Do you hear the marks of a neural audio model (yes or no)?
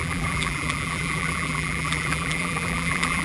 yes